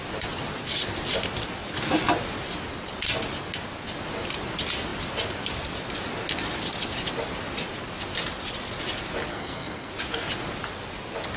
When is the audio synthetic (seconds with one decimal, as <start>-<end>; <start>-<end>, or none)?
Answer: 9.3-9.9